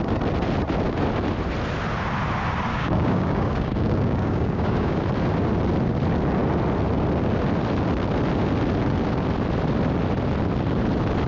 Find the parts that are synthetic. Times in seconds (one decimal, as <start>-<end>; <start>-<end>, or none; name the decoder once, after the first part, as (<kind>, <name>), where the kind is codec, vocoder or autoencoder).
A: 2.7-5.0 (codec, DAC)